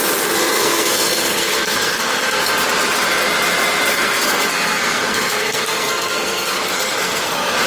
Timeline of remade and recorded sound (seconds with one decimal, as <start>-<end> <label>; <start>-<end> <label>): 0.0-0.5 recorded; 0.5-2.4 remade; 2.4-3.9 recorded; 3.9-7.7 remade